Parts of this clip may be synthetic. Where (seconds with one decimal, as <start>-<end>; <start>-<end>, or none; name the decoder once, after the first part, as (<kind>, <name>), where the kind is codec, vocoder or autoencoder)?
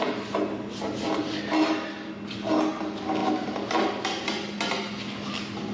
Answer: none